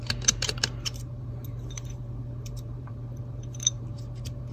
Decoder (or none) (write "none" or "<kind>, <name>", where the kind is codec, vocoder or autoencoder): vocoder, BigVGAN v2